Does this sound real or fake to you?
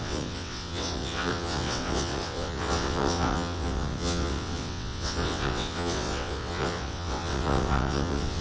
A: fake